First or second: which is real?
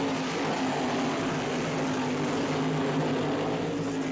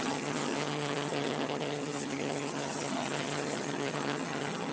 first